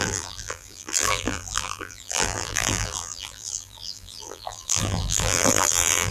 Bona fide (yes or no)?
no